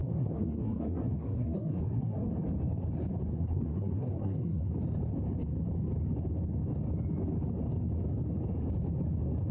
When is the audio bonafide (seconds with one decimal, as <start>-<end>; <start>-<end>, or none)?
2.3-3.3; 4.7-9.5